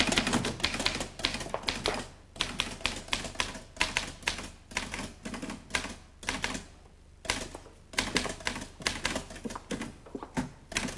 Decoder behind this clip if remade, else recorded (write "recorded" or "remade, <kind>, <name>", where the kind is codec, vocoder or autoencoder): recorded